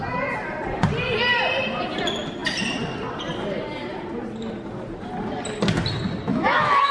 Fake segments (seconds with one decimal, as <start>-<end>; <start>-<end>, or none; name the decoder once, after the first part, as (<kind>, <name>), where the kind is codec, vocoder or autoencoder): 6.3-6.9 (autoencoder, DAC-VAE)